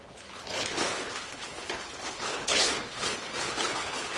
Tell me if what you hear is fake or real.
fake